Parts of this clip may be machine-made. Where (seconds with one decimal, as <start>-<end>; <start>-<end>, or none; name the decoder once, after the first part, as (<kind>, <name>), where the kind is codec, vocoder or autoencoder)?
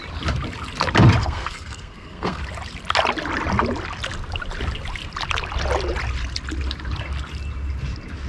1.2-2.4 (codec, SNAC)